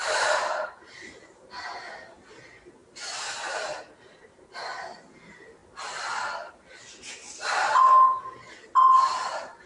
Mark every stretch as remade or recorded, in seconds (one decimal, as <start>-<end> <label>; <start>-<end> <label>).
0.0-5.6 remade; 5.6-8.9 recorded; 8.9-9.7 remade